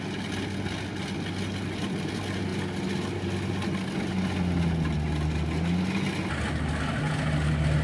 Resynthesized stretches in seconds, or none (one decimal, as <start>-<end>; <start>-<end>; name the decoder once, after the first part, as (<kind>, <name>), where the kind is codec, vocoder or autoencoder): none